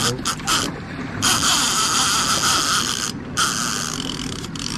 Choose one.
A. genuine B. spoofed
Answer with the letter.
A